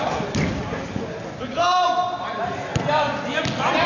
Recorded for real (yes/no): yes